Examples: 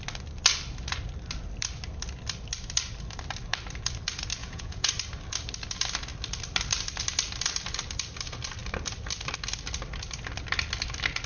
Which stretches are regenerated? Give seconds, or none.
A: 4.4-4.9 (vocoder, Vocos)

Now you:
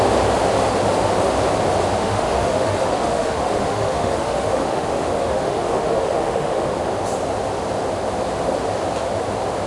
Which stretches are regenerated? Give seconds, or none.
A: 2.0-6.7 (autoencoder, DAC-VAE)

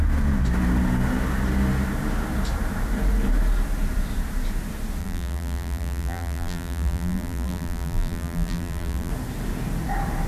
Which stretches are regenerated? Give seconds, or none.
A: 5.0-9.1 (vocoder, BigVGAN v2)

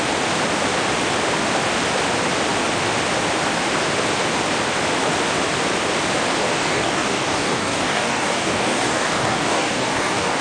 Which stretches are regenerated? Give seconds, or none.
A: 6.4-10.4 (codec, DAC)

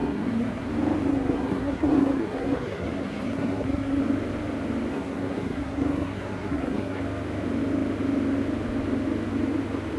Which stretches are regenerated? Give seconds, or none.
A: 0.0-0.7 (codec, SNAC); 1.1-4.0; 4.9-7.0

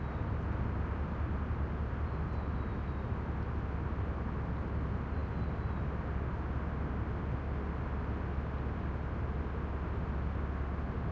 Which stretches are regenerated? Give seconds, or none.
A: none

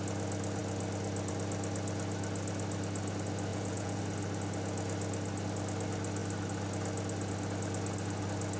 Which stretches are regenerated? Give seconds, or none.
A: 3.5-4.0 (vocoder, Vocos)

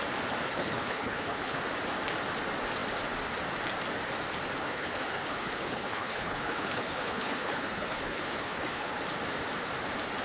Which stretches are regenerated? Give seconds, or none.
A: 0.4-1.6 (codec, HILCodec); 4.6-9.0